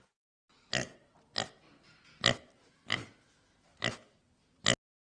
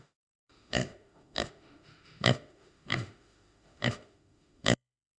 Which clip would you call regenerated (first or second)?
second